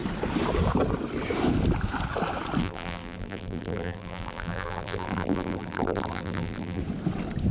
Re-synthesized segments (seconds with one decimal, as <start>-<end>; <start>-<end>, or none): 2.6-6.8